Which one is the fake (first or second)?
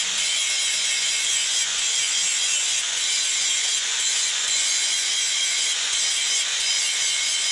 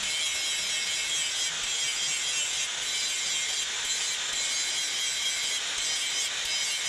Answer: first